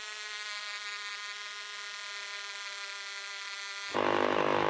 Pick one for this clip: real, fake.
real